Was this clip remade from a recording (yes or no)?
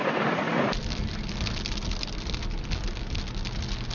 no